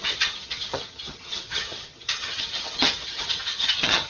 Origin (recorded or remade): remade